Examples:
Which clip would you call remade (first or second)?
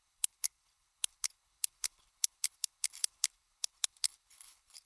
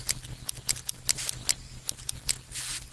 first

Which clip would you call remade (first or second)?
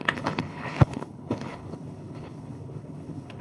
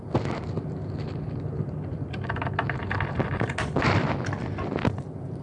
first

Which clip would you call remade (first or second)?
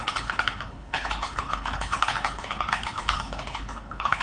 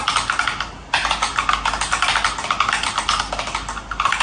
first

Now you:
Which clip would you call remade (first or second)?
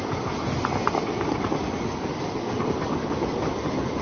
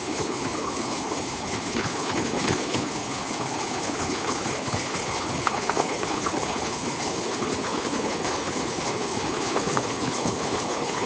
second